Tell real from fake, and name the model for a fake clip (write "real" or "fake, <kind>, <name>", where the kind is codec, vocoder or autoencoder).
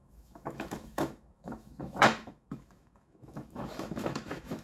fake, autoencoder, DAC-VAE